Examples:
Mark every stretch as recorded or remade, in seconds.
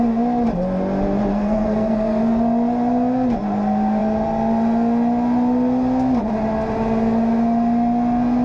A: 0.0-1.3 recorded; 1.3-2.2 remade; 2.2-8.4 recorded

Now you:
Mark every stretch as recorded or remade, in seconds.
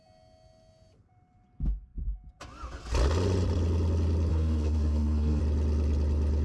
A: 0.0-4.3 recorded; 4.3-5.4 remade; 5.4-6.4 recorded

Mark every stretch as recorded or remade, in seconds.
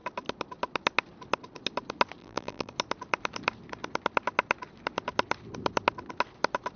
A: 0.0-2.2 recorded; 2.2-2.7 remade; 2.7-6.8 recorded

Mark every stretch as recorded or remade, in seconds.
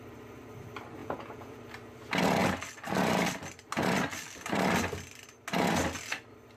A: 0.0-1.0 recorded; 1.0-1.6 remade; 1.6-6.6 recorded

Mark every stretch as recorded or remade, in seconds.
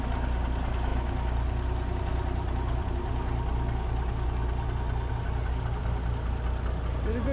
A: 0.0-7.3 recorded